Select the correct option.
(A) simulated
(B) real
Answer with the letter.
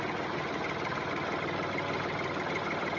B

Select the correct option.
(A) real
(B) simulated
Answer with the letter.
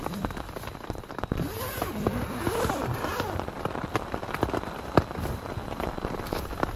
A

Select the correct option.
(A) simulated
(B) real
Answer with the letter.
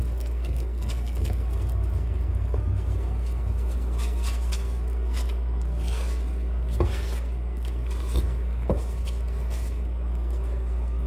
A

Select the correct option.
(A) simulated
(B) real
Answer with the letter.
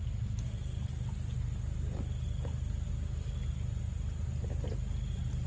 B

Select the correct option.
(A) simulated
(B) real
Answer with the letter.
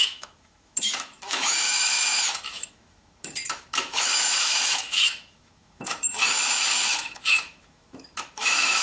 A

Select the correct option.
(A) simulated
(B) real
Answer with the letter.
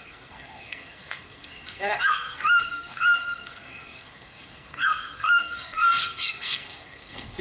A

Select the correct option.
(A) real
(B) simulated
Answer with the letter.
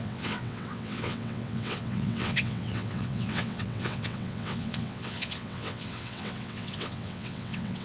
B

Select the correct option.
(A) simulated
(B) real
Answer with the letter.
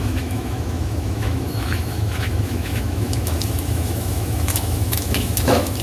A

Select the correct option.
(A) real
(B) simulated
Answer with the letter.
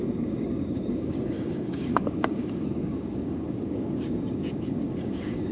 B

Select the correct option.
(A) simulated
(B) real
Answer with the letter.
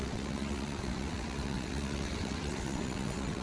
A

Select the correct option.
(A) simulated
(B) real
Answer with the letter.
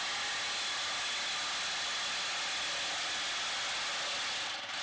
B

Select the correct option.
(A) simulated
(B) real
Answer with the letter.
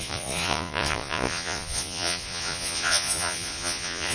A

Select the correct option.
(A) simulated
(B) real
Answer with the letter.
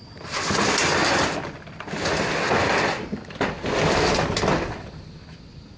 B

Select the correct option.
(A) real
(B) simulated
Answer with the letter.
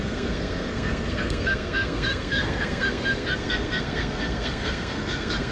B